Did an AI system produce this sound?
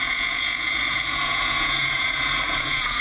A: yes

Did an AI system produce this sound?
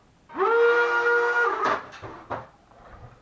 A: no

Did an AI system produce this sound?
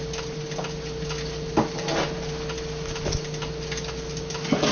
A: no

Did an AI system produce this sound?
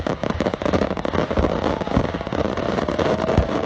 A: yes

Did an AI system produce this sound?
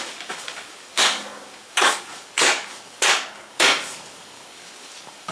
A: yes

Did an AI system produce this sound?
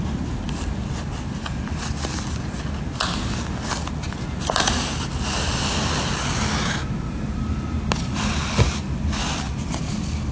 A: no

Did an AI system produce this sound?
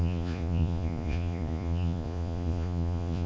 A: yes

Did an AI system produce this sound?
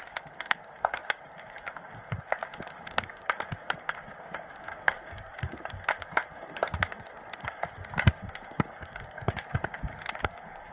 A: yes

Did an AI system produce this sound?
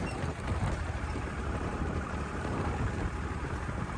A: yes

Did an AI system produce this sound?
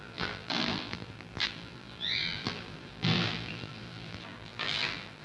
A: yes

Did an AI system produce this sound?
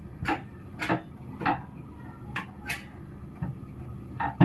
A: no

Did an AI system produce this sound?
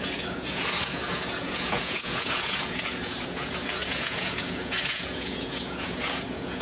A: yes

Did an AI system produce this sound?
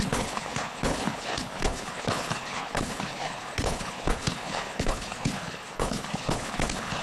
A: yes